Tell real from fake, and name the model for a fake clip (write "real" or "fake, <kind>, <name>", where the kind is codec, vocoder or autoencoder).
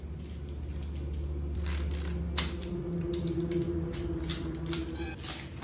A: real